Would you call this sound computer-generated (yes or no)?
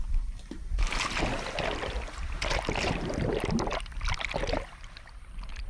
no